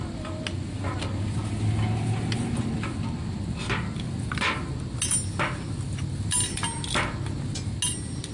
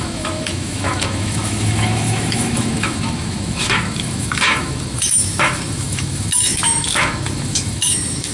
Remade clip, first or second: second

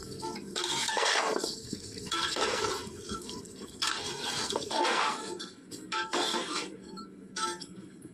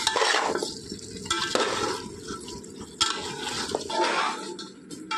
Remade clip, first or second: first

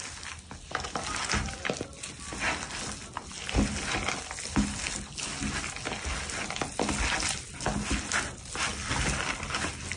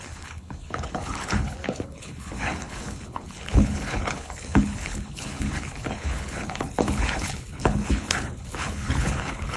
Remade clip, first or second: second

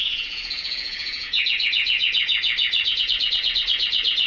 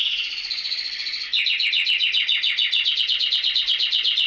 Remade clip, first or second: first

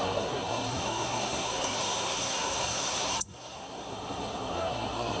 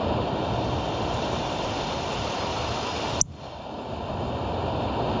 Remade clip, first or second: first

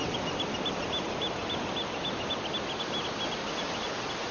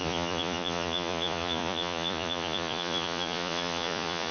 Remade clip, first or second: second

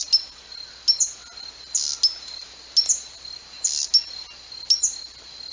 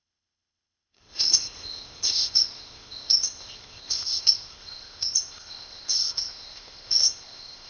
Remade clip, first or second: second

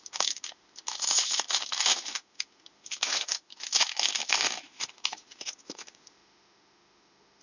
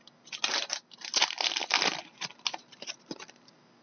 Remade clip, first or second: first